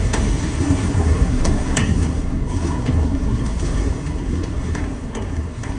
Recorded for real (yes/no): no